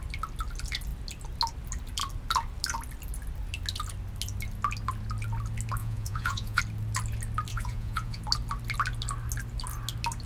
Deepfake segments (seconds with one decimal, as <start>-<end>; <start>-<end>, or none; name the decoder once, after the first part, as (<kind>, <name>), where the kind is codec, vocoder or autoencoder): 5.8-6.6 (vocoder, Vocos); 7.5-8.2